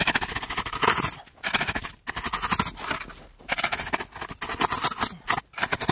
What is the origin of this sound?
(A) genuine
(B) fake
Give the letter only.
A